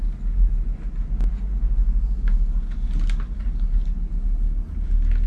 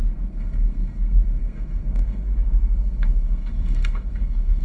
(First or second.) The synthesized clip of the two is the second